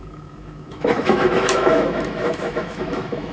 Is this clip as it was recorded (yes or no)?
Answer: no